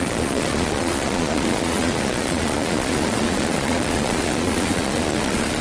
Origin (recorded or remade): remade